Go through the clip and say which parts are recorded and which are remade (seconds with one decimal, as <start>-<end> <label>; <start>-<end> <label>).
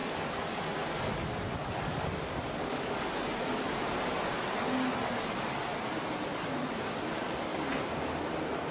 0.0-0.6 remade; 0.6-1.6 recorded; 1.6-3.7 remade; 3.7-8.7 recorded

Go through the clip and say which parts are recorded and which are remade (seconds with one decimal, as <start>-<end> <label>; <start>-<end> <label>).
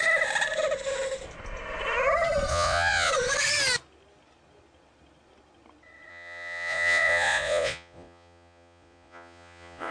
0.0-2.5 recorded; 2.5-3.1 remade; 3.1-6.1 recorded; 6.1-9.9 remade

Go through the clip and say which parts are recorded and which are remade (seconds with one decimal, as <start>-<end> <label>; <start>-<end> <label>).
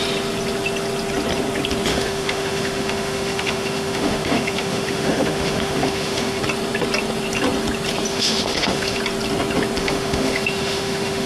0.0-1.9 recorded; 1.9-6.4 remade; 6.4-8.1 recorded; 8.1-9.0 remade; 9.0-9.8 recorded; 9.8-11.3 remade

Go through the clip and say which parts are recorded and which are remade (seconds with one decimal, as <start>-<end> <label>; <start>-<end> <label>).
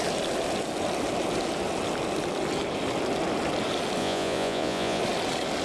0.0-4.0 recorded; 4.0-5.0 remade; 5.0-5.6 recorded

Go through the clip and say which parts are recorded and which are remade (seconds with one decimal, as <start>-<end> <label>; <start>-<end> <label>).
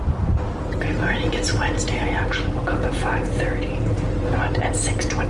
0.0-5.3 recorded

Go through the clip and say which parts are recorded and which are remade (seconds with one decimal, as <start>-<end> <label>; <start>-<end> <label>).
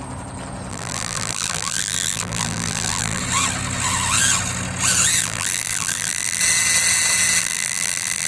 0.0-0.7 recorded; 0.7-3.2 remade; 3.2-5.2 recorded; 5.2-6.4 remade; 6.4-7.4 recorded; 7.4-8.3 remade